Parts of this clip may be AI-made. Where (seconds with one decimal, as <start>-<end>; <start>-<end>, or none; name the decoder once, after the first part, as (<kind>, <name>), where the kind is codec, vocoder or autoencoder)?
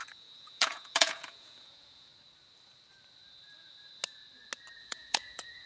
0.0-2.1 (vocoder, Vocos); 4.8-5.7